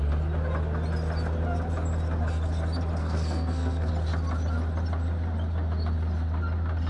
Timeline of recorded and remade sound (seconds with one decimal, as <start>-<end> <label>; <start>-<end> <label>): 0.0-3.0 recorded; 3.0-3.9 remade; 3.9-6.9 recorded